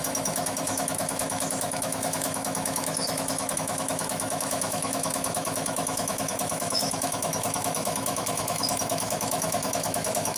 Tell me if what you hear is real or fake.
fake